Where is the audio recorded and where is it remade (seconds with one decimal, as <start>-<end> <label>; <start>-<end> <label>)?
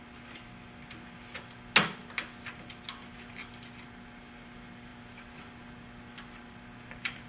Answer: 0.0-7.3 recorded